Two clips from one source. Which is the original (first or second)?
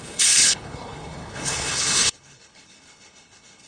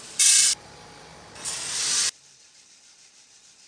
second